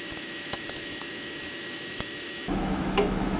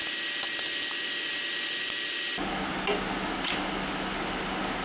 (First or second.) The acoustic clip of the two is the second